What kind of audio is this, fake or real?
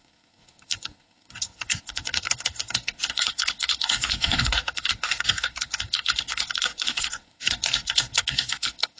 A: fake